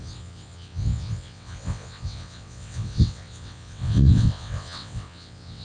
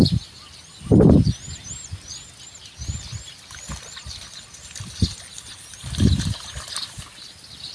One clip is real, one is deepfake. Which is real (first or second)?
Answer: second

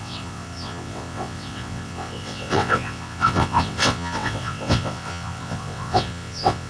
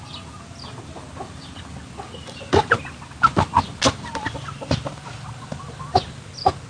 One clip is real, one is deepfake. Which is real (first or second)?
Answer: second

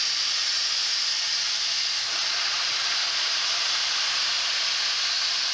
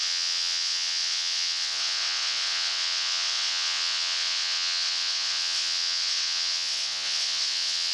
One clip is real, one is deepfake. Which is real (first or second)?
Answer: first